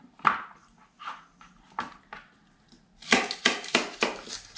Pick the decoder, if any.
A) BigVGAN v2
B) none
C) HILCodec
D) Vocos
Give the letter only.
B